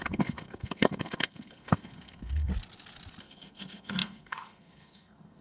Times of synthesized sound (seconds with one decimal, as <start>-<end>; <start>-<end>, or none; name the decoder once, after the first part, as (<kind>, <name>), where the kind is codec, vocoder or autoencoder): 0.0-2.5 (codec, SNAC); 3.2-5.4